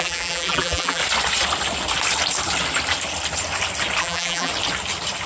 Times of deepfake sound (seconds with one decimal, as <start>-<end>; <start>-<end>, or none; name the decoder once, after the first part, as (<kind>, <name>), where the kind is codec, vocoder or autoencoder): 0.0-1.0 (vocoder, BigVGAN v2); 4.0-4.5